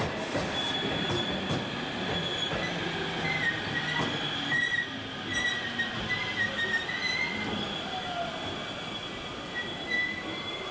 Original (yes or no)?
yes